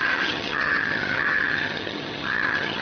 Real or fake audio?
fake